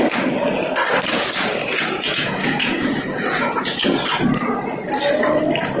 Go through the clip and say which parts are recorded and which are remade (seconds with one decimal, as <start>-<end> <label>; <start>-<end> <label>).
0.0-1.6 recorded; 1.6-3.9 remade; 3.9-5.8 recorded